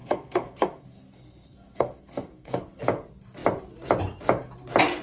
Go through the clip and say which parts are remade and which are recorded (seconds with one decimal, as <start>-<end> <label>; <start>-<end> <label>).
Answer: 0.0-2.6 remade; 2.6-5.0 recorded